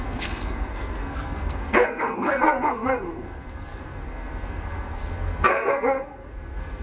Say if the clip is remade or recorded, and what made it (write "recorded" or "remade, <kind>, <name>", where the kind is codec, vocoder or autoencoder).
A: remade, codec, SNAC